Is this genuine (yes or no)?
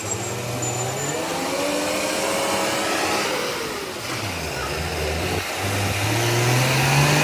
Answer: yes